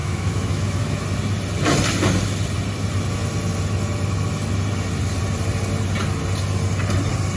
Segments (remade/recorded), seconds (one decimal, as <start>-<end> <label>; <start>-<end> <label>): 0.0-1.0 remade; 1.0-7.4 recorded